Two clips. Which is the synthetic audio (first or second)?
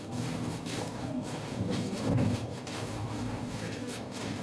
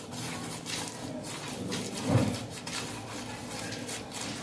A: first